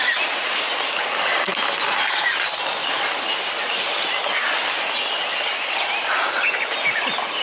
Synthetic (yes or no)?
no